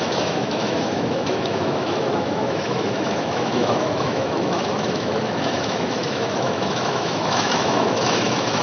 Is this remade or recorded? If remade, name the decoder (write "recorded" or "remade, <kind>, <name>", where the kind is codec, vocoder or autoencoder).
remade, autoencoder, DAC-VAE